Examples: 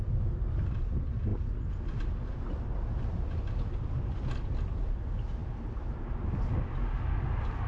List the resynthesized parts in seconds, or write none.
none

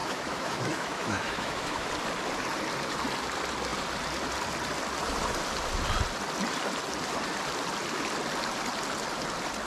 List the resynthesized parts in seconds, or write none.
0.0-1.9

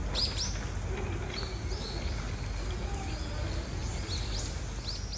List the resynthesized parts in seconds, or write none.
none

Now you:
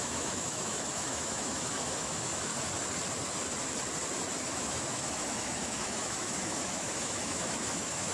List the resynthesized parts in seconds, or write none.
0.0-2.5; 4.5-8.1